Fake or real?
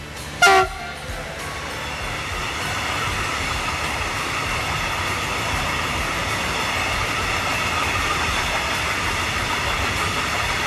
real